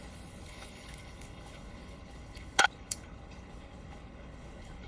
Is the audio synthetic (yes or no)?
yes